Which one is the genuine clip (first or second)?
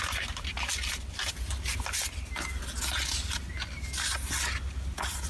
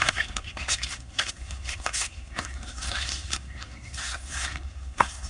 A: first